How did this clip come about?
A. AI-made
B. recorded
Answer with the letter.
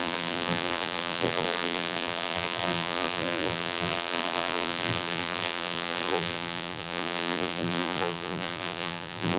A